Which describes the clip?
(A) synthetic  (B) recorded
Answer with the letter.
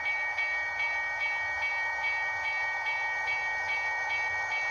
B